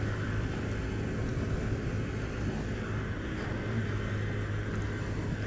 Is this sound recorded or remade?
recorded